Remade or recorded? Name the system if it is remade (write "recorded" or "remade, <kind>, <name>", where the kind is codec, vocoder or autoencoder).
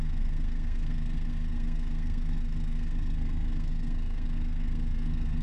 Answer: remade, codec, SNAC